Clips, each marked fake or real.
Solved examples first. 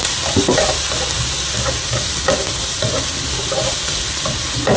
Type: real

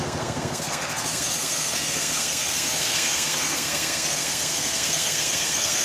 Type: fake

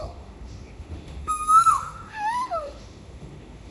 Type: fake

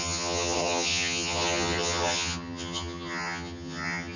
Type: fake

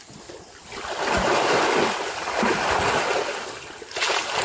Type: real